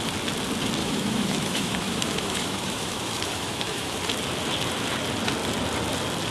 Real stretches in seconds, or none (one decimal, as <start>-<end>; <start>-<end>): 0.0-0.8; 4.0-6.3